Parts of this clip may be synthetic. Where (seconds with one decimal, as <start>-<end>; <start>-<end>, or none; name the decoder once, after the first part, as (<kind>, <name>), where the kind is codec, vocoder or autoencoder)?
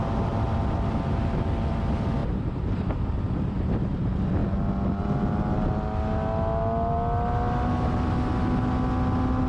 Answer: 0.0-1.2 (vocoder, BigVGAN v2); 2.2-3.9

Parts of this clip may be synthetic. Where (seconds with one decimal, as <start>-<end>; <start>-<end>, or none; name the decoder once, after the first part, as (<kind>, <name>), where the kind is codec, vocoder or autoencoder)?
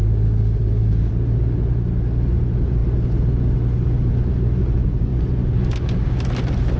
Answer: 0.0-1.1 (codec, DAC)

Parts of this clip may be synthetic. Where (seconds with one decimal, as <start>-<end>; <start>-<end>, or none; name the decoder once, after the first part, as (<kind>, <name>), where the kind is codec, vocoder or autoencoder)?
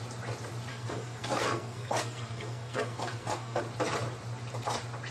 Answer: 0.7-3.6 (codec, SNAC)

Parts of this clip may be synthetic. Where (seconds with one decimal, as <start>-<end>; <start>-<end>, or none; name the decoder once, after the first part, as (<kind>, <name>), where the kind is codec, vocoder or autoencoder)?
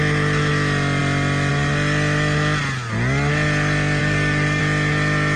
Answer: 4.0-4.6 (codec, DAC)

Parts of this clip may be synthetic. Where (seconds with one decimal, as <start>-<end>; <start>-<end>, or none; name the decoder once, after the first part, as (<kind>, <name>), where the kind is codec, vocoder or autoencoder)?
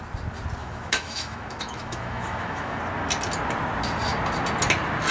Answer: 0.6-2.8 (autoencoder, DAC-VAE)